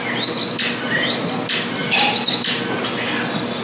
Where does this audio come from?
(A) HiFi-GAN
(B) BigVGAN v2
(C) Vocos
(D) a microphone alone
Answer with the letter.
D